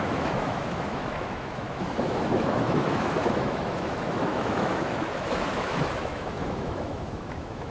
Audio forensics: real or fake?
fake